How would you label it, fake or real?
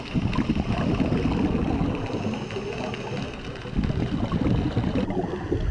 real